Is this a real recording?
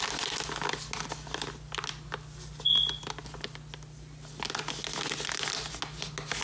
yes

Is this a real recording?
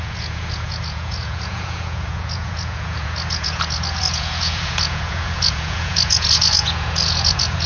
no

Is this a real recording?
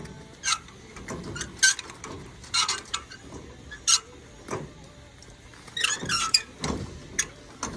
yes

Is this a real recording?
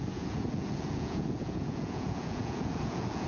no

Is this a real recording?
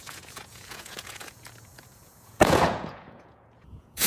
no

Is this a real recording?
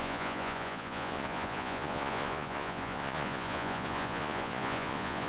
no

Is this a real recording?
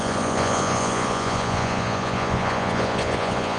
no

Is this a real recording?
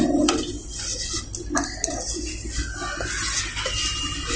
yes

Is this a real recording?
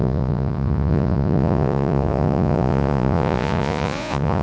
no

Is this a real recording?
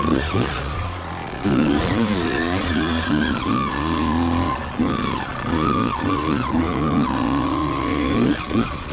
no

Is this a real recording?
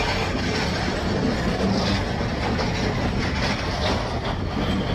yes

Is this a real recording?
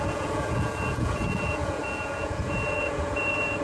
no